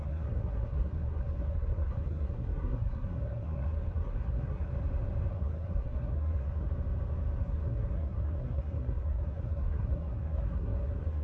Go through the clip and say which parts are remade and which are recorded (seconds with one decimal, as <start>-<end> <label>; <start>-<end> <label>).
0.0-4.7 remade; 4.7-5.3 recorded; 5.3-6.7 remade; 6.7-7.4 recorded; 7.4-11.2 remade

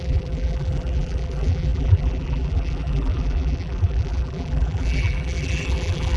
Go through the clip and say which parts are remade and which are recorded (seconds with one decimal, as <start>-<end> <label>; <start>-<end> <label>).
0.0-6.2 remade

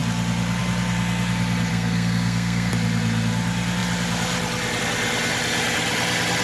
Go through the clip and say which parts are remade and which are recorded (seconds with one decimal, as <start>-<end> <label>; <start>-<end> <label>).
0.0-1.7 recorded; 1.7-2.7 remade; 2.7-6.4 recorded

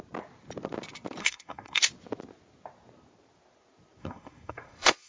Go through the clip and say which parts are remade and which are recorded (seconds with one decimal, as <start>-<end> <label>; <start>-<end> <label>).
0.0-1.2 recorded; 1.2-1.8 remade; 1.8-4.0 recorded; 4.0-5.1 remade

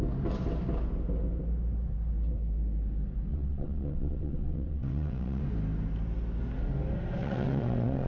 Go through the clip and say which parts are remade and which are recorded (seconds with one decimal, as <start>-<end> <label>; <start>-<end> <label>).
0.0-3.3 recorded; 3.3-5.4 remade; 5.4-7.2 recorded; 7.2-8.1 remade

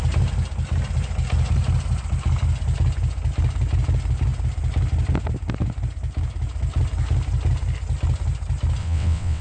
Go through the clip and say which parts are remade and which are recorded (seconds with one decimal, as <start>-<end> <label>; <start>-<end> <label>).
0.0-8.8 recorded; 8.8-9.4 remade